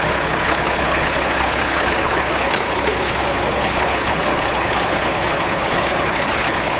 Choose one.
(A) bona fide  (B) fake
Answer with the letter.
B